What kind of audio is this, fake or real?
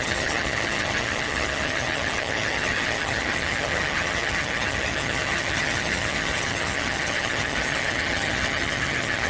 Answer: fake